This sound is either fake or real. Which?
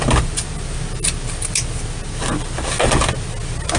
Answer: real